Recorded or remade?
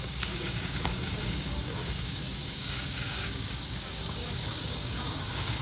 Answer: remade